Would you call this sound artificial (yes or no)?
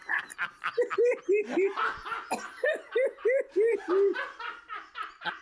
no